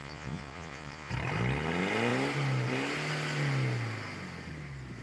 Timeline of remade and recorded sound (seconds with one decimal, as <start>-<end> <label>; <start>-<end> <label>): 0.0-1.1 remade; 1.1-5.0 recorded